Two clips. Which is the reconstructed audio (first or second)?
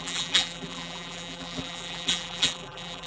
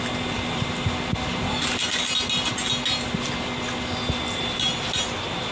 first